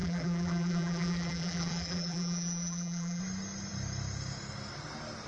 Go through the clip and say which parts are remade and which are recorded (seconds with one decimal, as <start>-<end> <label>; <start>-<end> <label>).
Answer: 0.0-3.2 remade; 3.2-5.3 recorded